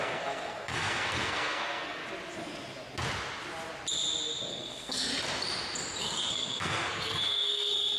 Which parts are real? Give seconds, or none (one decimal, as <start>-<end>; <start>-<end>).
2.0-4.5; 5.1-6.0

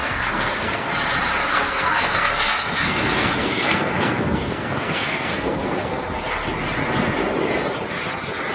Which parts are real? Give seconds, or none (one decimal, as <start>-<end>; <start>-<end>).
0.9-1.5; 6.0-8.5

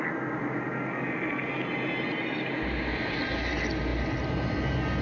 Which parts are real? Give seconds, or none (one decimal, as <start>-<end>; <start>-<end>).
0.0-5.0

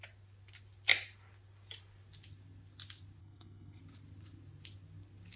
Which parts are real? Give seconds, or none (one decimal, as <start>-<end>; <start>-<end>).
0.0-3.2; 3.8-5.4